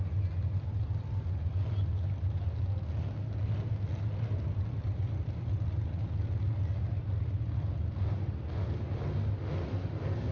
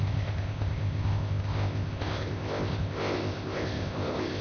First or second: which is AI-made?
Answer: second